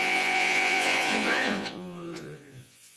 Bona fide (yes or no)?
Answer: no